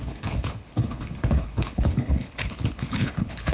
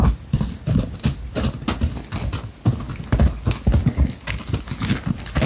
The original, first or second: second